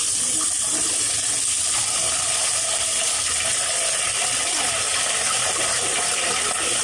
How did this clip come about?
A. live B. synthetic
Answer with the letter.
A